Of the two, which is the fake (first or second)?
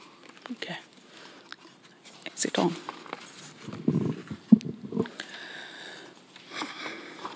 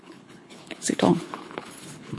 second